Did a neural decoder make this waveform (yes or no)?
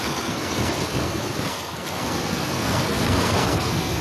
yes